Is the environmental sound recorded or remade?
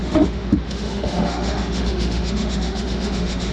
remade